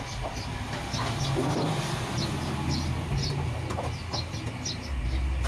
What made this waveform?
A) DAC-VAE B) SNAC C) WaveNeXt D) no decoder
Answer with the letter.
D